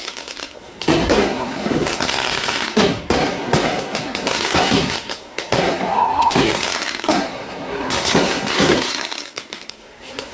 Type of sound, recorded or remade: remade